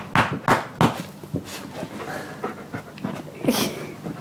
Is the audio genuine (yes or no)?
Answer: yes